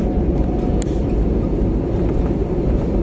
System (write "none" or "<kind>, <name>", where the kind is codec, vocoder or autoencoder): none